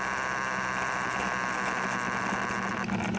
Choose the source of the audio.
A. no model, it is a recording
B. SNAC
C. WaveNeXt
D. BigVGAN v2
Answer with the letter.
A